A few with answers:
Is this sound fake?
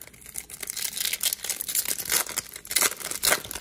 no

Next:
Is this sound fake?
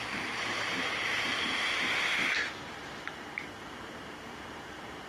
yes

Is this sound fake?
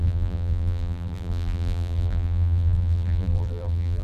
yes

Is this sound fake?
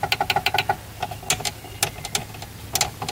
no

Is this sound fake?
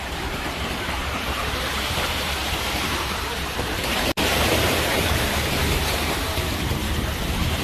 yes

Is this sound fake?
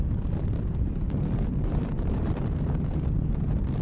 yes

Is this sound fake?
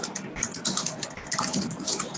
yes